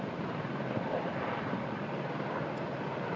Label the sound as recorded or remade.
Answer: remade